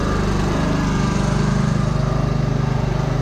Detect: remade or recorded remade